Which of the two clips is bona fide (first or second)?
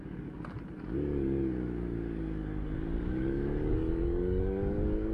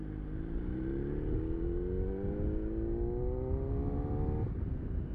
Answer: second